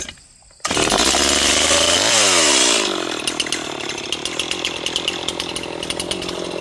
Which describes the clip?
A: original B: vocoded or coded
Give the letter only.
A